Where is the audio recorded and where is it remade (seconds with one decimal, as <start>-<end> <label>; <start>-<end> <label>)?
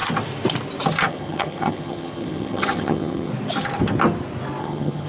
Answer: 0.0-1.1 recorded; 1.1-3.3 remade; 3.3-4.6 recorded; 4.6-5.1 remade